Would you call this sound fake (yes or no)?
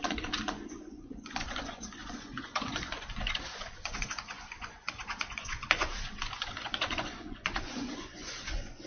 yes